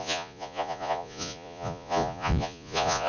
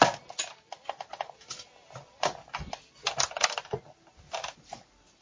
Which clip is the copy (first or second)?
first